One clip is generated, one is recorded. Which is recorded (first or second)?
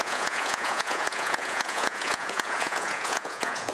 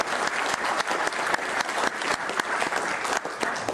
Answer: second